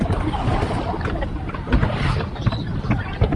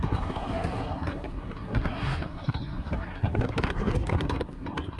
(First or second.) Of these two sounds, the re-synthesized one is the second